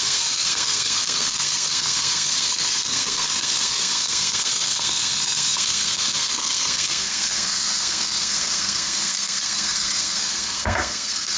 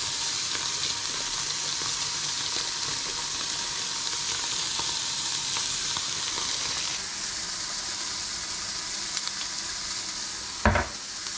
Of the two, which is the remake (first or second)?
first